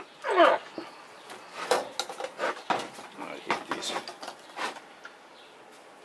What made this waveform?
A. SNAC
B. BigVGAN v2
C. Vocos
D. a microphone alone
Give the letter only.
D